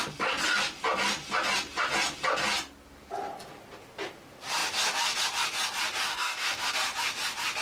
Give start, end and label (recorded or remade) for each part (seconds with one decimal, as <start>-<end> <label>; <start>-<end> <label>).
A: 0.0-6.1 recorded; 6.1-6.7 remade; 6.7-7.6 recorded

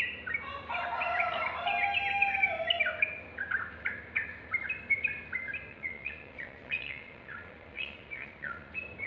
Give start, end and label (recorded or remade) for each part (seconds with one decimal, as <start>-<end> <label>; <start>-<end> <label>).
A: 0.0-5.7 recorded; 5.7-8.7 remade; 8.7-9.1 recorded

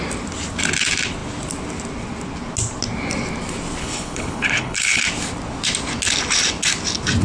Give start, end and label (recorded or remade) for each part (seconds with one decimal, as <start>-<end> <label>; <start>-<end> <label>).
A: 0.0-3.8 recorded; 3.8-5.0 remade; 5.0-7.2 recorded

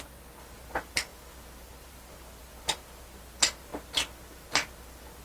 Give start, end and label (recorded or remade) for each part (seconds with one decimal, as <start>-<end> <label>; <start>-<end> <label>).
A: 0.0-5.2 recorded

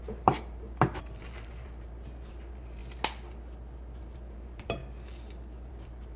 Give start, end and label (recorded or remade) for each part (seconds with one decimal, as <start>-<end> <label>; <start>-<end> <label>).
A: 0.0-2.8 remade; 2.8-4.0 recorded; 4.0-4.8 remade; 4.8-5.7 recorded; 5.7-6.2 remade

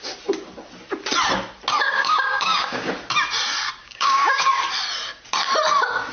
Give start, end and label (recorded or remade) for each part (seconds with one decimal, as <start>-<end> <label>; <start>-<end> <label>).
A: 0.0-1.8 recorded; 1.8-2.9 remade; 2.9-3.8 recorded; 3.8-4.5 remade; 4.5-6.1 recorded